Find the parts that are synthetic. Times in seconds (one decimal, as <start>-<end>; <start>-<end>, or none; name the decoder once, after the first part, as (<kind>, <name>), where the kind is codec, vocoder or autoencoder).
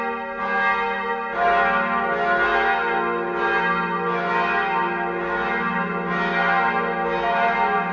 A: none